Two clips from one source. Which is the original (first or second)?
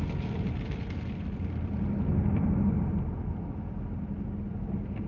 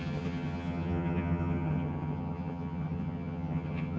first